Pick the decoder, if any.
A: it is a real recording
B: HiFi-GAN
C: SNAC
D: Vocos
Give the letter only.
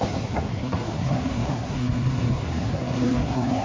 C